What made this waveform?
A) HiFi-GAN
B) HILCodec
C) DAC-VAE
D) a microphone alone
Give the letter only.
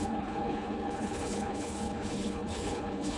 B